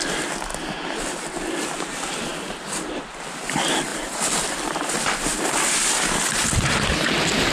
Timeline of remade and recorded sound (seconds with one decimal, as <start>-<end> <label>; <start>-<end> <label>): 0.0-7.5 recorded

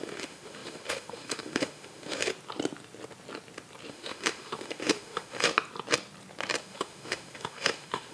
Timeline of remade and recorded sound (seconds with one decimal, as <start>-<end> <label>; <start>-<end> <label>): 0.0-2.3 remade; 2.3-3.9 recorded; 3.9-5.5 remade; 5.5-6.6 recorded; 6.6-8.1 remade